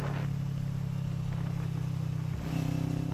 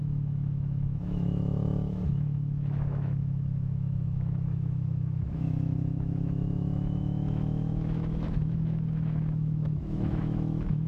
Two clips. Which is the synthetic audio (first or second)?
second